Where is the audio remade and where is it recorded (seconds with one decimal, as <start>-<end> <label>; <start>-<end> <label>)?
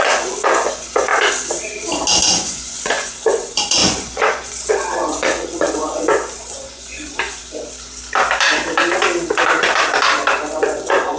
0.0-1.1 remade; 1.1-2.2 recorded; 2.2-7.4 remade; 7.4-10.6 recorded; 10.6-11.2 remade